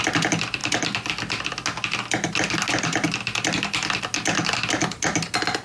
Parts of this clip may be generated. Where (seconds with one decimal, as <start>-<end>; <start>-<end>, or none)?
none